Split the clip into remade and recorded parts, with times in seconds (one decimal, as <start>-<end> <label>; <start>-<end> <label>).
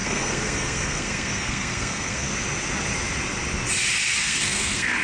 0.0-2.3 remade; 2.3-4.2 recorded; 4.2-5.0 remade